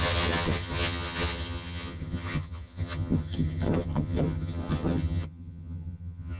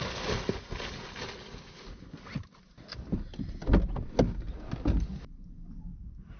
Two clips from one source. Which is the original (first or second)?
second